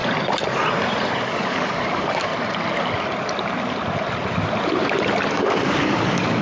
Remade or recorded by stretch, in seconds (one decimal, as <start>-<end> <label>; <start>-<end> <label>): 0.0-1.2 recorded; 1.2-2.3 remade; 2.3-5.3 recorded; 5.3-6.4 remade